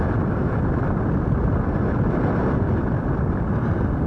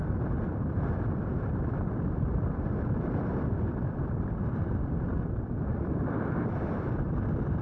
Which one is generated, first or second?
second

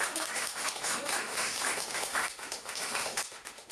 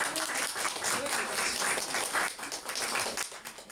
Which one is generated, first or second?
first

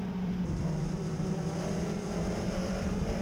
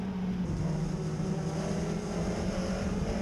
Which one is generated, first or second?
first